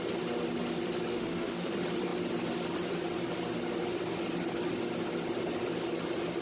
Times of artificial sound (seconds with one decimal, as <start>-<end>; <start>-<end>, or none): 1.1-1.7

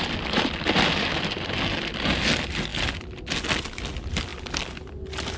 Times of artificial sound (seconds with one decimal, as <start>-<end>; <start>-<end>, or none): none

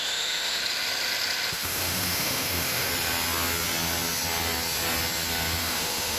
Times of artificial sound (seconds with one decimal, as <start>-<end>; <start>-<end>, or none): 0.0-0.6; 1.5-2.9; 5.6-6.2

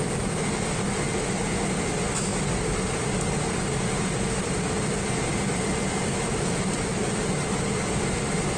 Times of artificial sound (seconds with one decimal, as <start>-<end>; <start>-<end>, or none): none